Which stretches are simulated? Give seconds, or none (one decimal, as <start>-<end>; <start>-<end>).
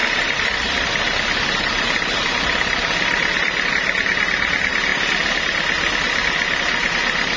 0.0-3.7